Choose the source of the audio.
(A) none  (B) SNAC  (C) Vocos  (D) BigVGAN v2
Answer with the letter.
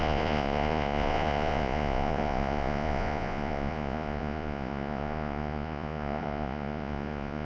C